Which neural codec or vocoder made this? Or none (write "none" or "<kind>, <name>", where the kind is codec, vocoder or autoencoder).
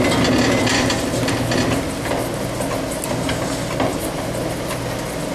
none